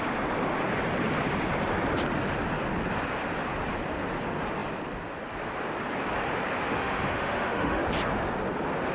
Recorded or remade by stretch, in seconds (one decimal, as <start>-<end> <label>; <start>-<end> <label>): 0.0-6.7 recorded; 6.7-7.8 remade; 7.8-8.9 recorded